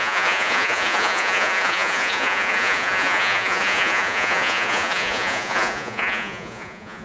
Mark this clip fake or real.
fake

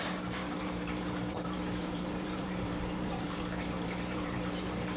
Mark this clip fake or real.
fake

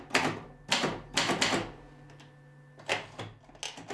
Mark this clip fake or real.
real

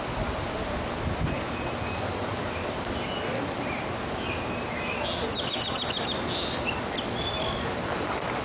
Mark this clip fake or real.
real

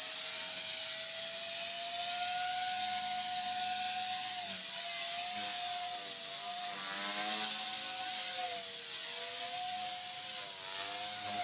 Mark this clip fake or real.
real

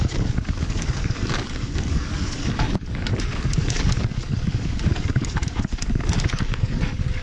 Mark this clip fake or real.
fake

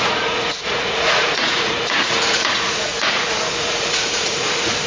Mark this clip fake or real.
fake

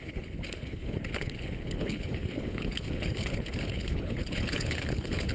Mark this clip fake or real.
fake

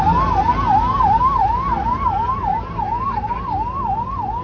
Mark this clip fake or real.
real